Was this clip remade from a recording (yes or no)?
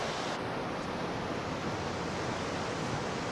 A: no